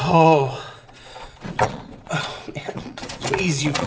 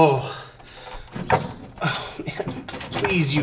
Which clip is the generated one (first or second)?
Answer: first